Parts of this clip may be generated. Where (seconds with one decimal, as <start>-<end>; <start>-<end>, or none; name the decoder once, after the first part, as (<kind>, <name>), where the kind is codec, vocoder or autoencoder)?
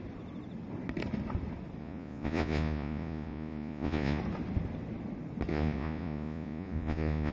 1.8-4.2 (vocoder, Vocos); 5.5-7.3